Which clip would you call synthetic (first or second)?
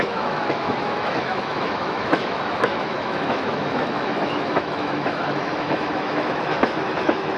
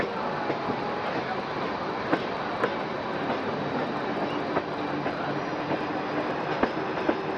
first